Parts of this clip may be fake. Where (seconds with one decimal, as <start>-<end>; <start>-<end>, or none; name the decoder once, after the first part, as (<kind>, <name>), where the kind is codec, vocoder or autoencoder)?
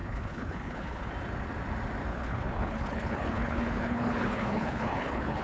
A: 0.0-1.1 (codec, HILCodec); 2.1-5.4